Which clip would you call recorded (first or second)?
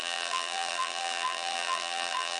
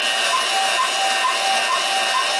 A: second